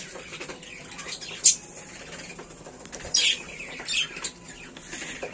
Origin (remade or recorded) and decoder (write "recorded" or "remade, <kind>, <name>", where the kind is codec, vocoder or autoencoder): recorded